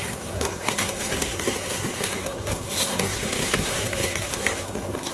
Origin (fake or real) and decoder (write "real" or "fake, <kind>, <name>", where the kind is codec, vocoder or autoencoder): fake, codec, SNAC